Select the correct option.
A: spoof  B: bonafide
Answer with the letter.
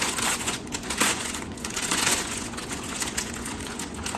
A